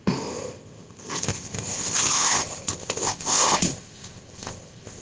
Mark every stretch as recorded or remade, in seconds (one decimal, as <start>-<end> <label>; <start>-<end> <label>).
0.0-5.0 remade